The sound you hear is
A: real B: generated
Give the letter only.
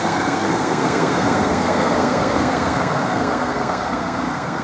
B